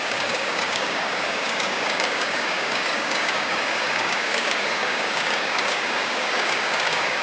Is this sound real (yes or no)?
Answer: no